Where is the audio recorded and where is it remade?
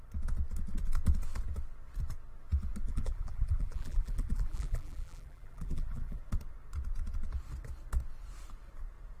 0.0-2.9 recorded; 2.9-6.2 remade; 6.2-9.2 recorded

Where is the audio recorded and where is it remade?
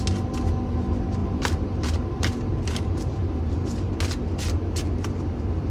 0.0-1.2 recorded; 1.2-3.9 remade; 3.9-5.7 recorded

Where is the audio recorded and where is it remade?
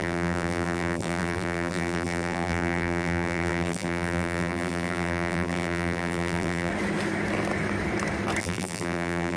0.0-6.7 remade; 6.7-8.4 recorded; 8.4-9.4 remade